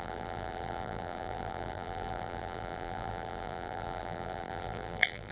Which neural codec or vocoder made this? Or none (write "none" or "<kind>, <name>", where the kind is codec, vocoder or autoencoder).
vocoder, BigVGAN v2